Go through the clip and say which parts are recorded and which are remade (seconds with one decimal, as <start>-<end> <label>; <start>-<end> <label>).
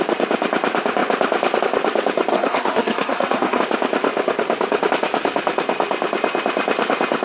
0.0-2.3 recorded; 2.3-3.6 remade; 3.6-7.2 recorded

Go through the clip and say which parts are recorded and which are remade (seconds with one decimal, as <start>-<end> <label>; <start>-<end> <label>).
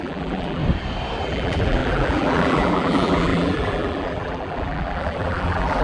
0.0-0.6 remade; 0.6-1.2 recorded; 1.2-5.8 remade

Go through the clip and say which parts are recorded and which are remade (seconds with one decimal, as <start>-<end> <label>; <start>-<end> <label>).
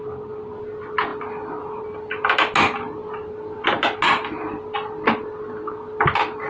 0.0-6.5 recorded